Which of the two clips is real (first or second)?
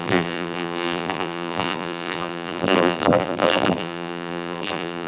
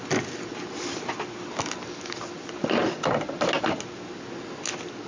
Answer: second